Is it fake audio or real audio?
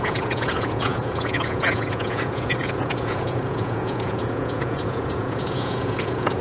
fake